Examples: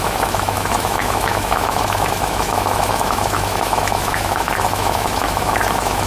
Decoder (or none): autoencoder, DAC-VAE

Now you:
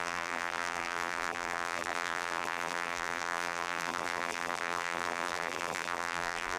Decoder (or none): vocoder, BigVGAN v2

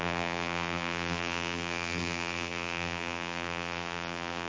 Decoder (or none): vocoder, BigVGAN v2